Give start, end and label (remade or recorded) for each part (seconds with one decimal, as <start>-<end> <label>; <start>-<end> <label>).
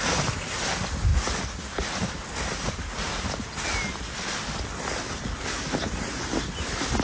0.0-7.0 recorded